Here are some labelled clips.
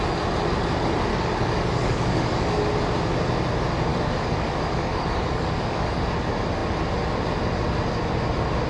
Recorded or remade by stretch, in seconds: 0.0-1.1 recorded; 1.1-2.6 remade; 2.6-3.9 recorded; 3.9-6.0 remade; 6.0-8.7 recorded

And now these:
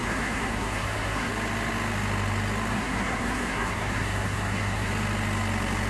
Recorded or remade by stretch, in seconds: 0.0-1.3 remade; 1.3-2.7 recorded; 2.7-4.9 remade; 4.9-5.9 recorded

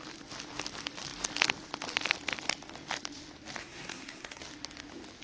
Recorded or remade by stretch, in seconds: 0.0-3.6 recorded; 3.6-4.4 remade; 4.4-5.2 recorded

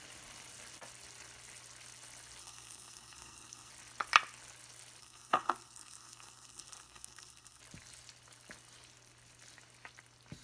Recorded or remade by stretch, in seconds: 0.0-2.4 recorded; 2.4-3.7 remade; 3.7-5.0 recorded; 5.0-7.6 remade; 7.6-10.4 recorded

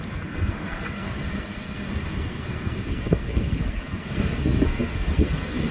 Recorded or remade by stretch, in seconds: 0.0-5.7 remade

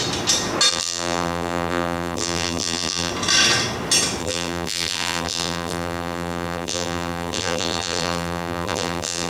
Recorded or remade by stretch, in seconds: 0.0-0.7 recorded; 0.7-3.1 remade; 3.1-4.2 recorded; 4.2-9.3 remade

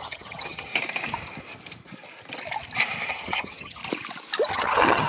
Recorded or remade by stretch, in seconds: 0.0-0.7 remade; 0.7-3.1 recorded; 3.1-3.8 remade; 3.8-4.5 recorded; 4.5-5.1 remade

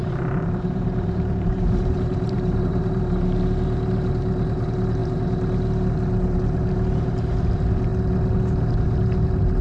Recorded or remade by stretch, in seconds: 0.0-3.0 remade; 3.0-9.6 recorded